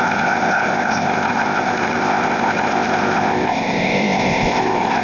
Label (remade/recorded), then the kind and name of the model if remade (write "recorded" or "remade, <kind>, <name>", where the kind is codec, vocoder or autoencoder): remade, codec, ZipCodec